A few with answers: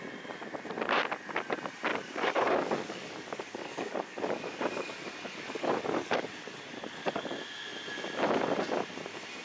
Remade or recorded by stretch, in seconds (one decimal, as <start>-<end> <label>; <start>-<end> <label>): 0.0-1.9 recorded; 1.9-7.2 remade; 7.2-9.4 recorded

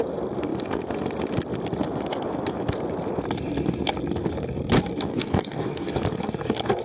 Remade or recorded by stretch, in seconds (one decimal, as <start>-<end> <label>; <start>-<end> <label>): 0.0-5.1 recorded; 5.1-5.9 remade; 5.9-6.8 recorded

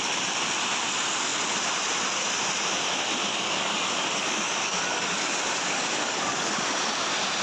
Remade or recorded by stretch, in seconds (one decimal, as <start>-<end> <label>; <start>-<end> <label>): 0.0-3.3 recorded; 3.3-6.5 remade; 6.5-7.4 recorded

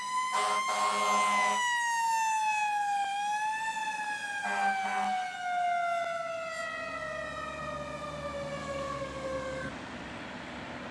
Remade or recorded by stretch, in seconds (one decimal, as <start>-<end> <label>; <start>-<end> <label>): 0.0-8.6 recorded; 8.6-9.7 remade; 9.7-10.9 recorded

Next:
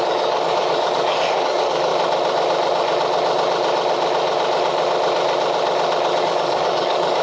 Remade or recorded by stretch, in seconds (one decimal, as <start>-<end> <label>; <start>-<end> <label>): 0.0-1.9 remade; 1.9-6.2 recorded; 6.2-7.2 remade

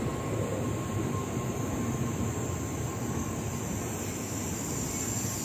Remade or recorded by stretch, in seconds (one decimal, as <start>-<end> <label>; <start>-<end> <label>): 0.0-2.9 recorded; 2.9-3.5 remade; 3.5-5.4 recorded